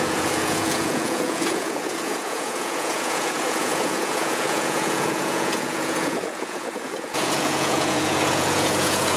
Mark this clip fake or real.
fake